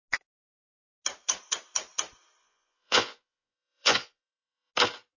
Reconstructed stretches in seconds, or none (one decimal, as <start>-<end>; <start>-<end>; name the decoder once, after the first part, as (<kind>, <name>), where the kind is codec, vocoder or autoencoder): 2.4-4.7 (vocoder, Vocos)